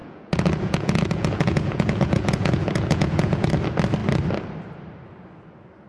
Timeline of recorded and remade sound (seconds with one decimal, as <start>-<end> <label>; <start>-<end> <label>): 0.0-3.5 remade; 3.5-5.9 recorded